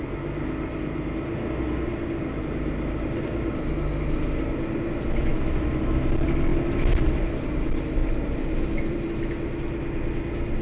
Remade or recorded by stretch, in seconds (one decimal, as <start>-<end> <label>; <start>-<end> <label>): 0.0-5.3 recorded; 5.3-5.9 remade; 5.9-8.0 recorded; 8.0-9.1 remade; 9.1-10.6 recorded